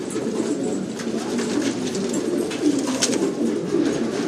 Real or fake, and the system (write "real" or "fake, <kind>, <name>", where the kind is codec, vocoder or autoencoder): real